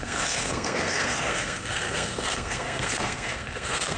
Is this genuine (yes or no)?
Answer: no